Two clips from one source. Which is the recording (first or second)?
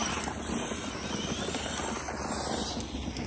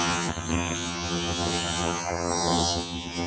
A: first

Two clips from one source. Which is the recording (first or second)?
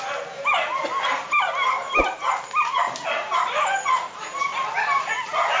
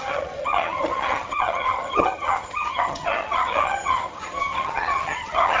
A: first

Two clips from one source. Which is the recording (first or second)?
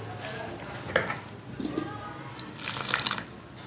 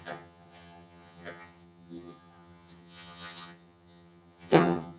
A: first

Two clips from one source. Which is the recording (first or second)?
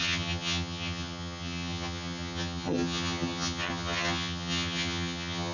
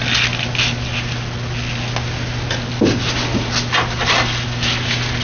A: second